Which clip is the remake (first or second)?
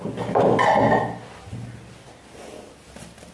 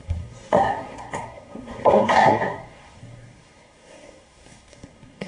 second